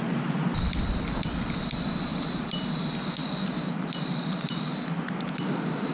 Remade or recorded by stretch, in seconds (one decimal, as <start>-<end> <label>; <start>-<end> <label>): 0.0-2.1 recorded; 2.1-2.7 remade; 2.7-3.2 recorded; 3.2-5.1 remade; 5.1-5.9 recorded